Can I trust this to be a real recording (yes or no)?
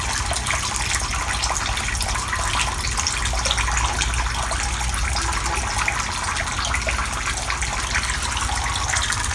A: yes